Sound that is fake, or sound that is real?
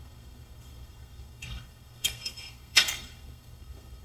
fake